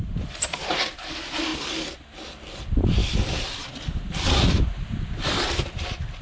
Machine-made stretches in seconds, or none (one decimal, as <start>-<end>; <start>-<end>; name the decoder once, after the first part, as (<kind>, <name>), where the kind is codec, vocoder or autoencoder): none